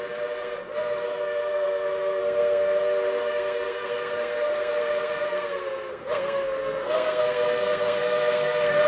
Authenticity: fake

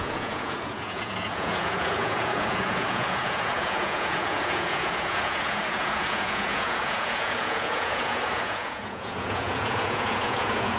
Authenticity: fake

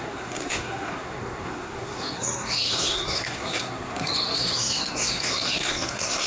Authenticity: fake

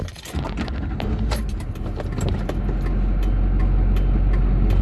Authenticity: real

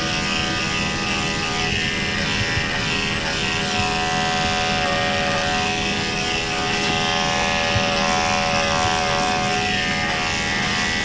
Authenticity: real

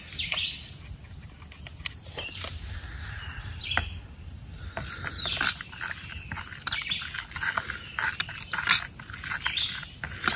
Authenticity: real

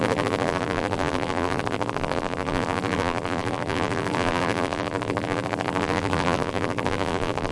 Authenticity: fake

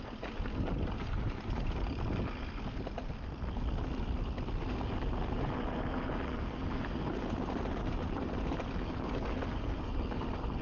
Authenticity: real